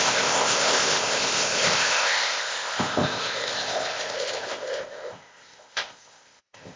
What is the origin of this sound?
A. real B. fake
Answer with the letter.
B